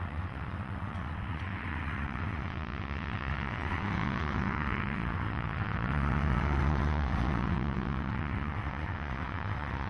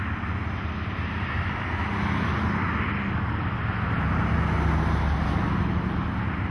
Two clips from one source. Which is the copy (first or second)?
first